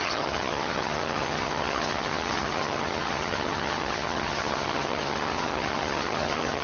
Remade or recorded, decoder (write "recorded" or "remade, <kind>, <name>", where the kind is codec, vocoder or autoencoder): remade, vocoder, HiFi-GAN